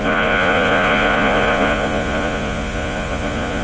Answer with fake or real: fake